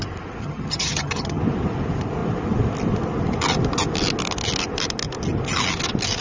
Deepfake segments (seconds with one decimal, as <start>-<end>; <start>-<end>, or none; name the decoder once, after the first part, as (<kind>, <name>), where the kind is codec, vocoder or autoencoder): 0.4-1.4 (vocoder, HiFi-GAN)